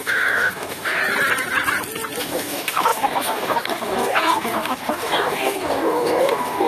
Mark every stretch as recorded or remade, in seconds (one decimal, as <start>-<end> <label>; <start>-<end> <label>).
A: 0.0-1.0 remade; 1.0-2.2 recorded; 2.2-6.7 remade